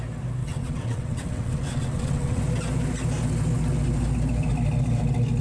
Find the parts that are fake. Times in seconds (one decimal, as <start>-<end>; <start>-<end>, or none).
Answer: 0.4-2.4

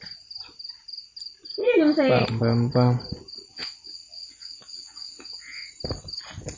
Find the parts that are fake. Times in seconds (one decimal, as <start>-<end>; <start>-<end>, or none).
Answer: 3.5-5.7

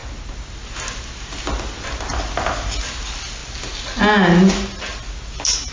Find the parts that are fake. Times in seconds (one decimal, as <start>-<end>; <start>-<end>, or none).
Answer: none

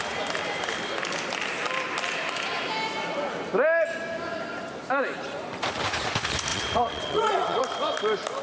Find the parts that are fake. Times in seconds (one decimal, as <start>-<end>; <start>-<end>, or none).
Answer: 6.5-7.6

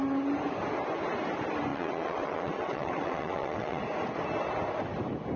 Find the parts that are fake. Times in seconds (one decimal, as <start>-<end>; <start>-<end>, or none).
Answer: 1.7-3.8